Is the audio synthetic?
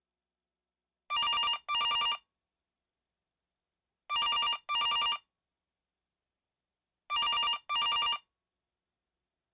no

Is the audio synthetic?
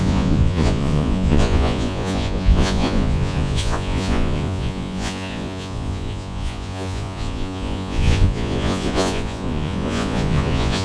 yes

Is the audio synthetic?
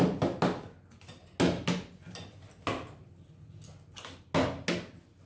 no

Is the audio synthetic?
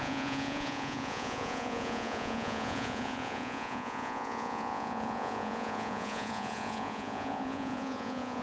yes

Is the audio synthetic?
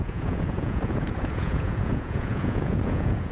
yes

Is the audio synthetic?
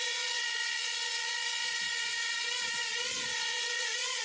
yes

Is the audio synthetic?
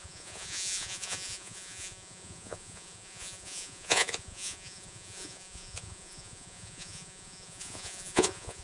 yes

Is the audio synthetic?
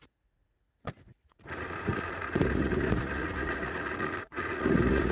yes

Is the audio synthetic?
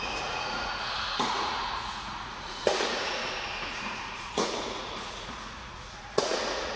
yes